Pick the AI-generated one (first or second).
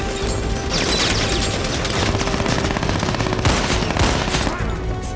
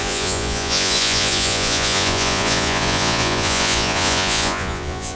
second